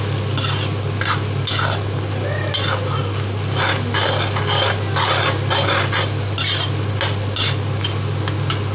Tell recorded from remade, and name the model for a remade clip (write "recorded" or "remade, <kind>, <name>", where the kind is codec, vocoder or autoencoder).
recorded